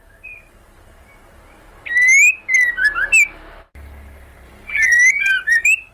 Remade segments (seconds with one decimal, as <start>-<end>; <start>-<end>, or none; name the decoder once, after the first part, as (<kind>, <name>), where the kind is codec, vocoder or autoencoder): 0.0-1.7 (vocoder, BigVGAN v2); 5.2-5.9